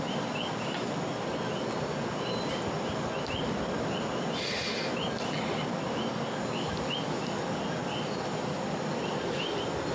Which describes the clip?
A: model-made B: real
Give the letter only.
B